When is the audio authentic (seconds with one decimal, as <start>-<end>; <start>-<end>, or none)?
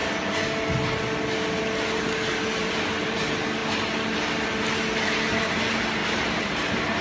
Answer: 0.0-2.6; 3.2-6.0